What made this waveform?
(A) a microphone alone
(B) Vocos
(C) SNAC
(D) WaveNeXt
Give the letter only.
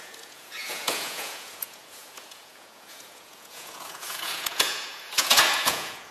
B